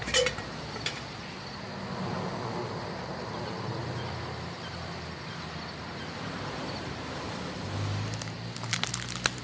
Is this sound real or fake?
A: real